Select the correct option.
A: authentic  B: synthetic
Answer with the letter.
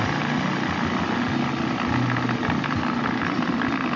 A